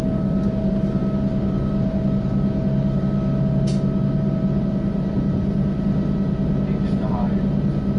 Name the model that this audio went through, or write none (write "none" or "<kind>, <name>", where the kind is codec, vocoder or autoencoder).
none